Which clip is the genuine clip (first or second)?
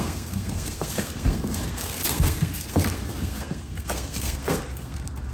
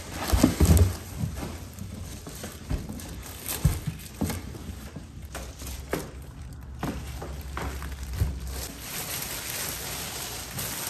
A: second